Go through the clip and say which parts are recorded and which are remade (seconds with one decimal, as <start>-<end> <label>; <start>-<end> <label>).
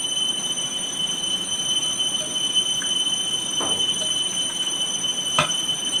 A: 0.0-1.5 remade; 1.5-3.8 recorded; 3.8-6.0 remade